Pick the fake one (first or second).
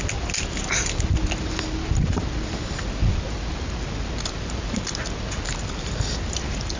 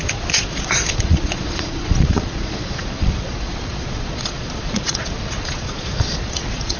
second